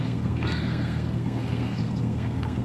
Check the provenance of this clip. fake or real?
fake